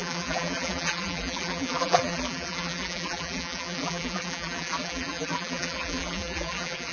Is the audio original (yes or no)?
no